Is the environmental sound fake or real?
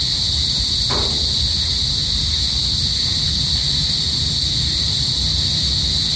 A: real